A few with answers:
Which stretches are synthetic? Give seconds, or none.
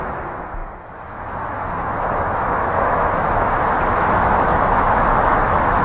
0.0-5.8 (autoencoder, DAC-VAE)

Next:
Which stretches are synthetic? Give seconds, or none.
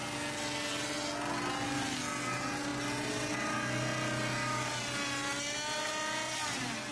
none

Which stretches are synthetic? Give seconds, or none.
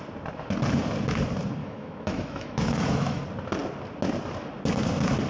1.6-3.2 (autoencoder, DAC-VAE)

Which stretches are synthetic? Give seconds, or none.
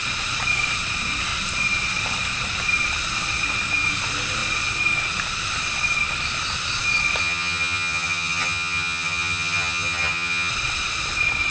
7.2-10.5 (vocoder, HiFi-GAN)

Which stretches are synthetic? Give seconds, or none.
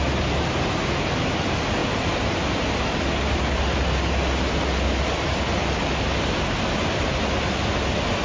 none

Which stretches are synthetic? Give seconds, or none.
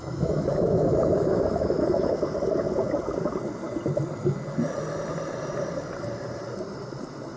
0.0-2.2 (autoencoder, DAC-VAE)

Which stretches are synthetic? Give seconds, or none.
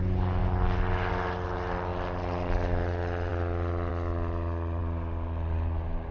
none